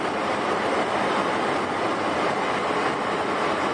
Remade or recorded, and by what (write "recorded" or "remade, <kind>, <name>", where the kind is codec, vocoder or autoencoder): recorded